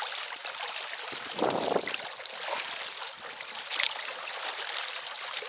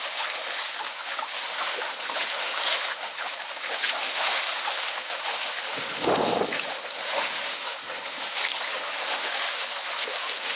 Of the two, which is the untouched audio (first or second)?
first